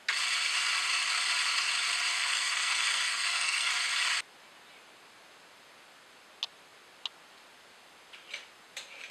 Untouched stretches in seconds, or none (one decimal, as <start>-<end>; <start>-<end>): 0.0-2.1; 3.7-9.1